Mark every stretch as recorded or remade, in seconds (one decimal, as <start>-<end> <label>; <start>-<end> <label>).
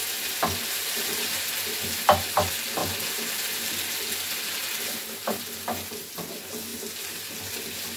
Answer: 0.0-0.6 remade; 0.6-4.6 recorded; 4.6-6.1 remade; 6.1-6.7 recorded; 6.7-7.5 remade; 7.5-8.0 recorded